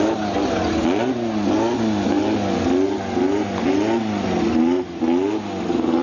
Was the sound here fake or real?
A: real